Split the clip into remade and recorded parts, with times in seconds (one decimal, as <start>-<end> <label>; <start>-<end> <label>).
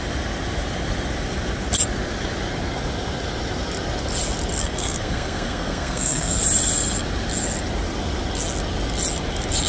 0.0-4.6 recorded; 4.6-6.4 remade; 6.4-9.7 recorded